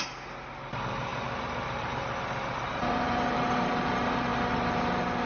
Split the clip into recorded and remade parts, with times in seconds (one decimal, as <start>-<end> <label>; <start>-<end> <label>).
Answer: 0.0-4.3 remade; 4.3-5.3 recorded